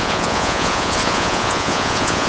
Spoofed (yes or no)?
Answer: yes